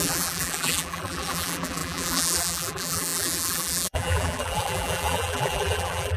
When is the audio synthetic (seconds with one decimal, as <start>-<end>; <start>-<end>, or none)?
0.0-6.2